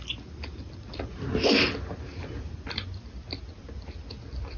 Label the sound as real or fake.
real